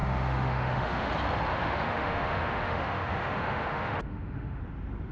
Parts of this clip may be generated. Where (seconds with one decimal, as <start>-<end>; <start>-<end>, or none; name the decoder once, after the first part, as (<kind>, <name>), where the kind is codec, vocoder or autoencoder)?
0.0-1.1 (autoencoder, DAC-VAE); 1.5-4.6